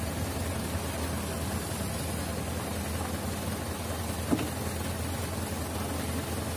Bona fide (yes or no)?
yes